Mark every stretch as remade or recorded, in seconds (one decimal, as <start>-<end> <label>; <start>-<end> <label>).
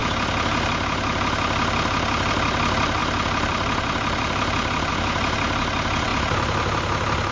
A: 0.0-2.3 recorded; 2.3-6.1 remade; 6.1-7.3 recorded